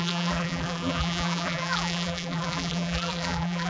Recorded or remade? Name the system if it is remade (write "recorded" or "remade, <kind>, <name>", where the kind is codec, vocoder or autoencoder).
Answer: remade, vocoder, BigVGAN v2